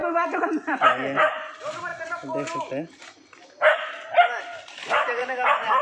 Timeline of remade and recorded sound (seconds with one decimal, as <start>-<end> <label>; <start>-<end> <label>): 0.0-5.2 recorded; 5.2-5.8 remade